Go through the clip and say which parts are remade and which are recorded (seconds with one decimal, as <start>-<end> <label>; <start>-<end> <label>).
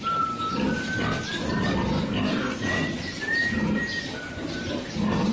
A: 0.0-1.3 remade; 1.3-3.0 recorded; 3.0-5.3 remade